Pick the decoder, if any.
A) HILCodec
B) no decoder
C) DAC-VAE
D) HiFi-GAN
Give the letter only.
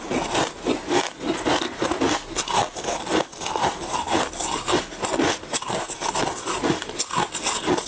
B